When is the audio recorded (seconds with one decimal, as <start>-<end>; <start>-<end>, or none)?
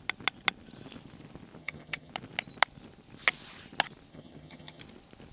0.0-1.6; 2.1-4.1; 4.8-5.3